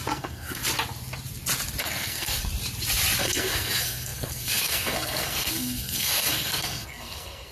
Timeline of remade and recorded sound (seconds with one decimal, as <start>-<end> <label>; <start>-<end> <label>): 0.0-0.6 remade; 0.6-1.8 recorded; 1.8-2.5 remade; 2.5-3.2 recorded; 3.2-7.5 remade